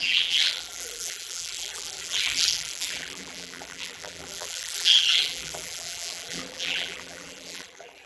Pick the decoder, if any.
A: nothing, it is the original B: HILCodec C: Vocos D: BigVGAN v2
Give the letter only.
D